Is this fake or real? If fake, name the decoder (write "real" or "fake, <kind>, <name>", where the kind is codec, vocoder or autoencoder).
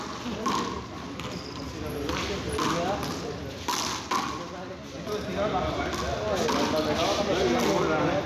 real